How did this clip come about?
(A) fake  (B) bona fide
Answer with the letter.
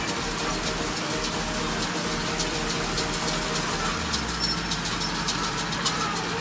B